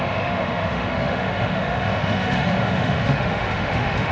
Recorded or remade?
remade